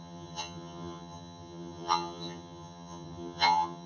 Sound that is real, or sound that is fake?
fake